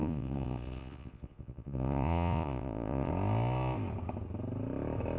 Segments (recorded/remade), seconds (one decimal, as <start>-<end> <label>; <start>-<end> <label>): 0.0-3.1 remade; 3.1-5.2 recorded